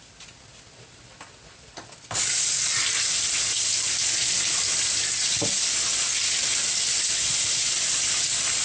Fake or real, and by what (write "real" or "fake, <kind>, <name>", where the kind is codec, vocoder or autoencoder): real